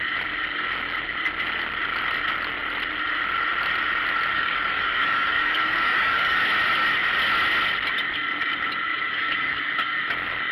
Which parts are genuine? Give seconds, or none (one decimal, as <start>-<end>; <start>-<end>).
0.0-4.3; 6.4-8.9; 10.0-10.5